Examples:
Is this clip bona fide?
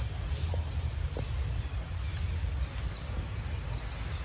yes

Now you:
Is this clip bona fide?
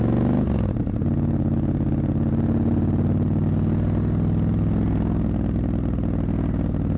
yes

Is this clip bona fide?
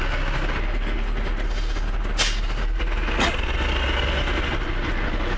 yes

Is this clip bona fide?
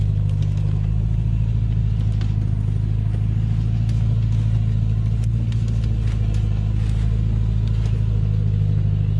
yes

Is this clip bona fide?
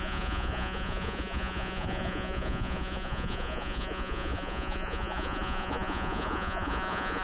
no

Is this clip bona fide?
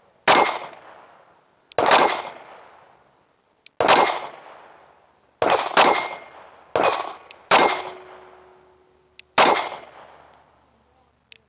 yes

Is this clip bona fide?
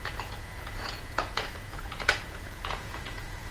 no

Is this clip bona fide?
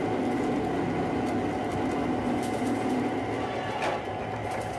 yes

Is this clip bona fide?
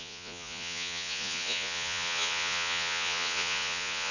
no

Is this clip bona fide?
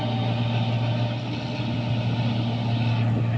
yes